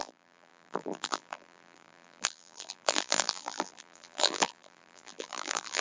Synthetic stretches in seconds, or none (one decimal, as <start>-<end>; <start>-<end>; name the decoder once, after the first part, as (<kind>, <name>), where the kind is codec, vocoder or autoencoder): 0.0-5.8 (vocoder, BigVGAN v2)